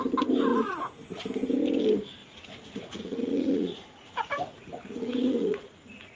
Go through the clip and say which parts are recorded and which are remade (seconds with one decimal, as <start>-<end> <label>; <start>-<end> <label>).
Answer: 0.0-0.5 recorded; 0.5-1.2 remade; 1.2-2.2 recorded; 2.2-6.2 remade